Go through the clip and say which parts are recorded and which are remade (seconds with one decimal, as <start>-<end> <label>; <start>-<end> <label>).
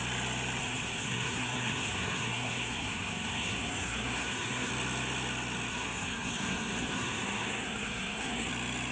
0.0-0.6 recorded; 0.6-4.7 remade; 4.7-5.7 recorded; 5.7-8.5 remade; 8.5-8.9 recorded